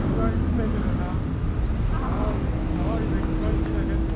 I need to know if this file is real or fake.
real